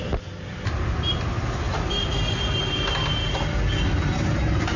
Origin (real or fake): real